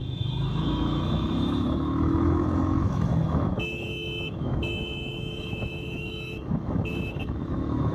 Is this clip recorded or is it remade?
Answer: remade